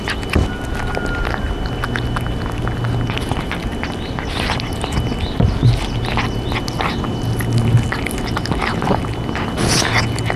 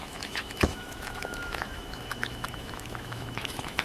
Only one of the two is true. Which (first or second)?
first